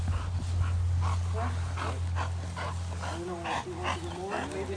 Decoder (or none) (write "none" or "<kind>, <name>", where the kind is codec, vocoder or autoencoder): none